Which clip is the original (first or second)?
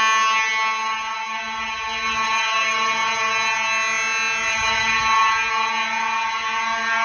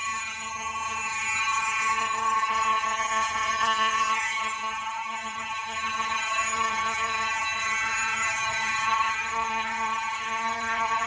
first